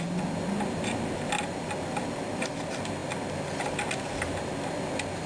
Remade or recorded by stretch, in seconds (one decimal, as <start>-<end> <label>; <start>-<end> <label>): 0.0-5.3 recorded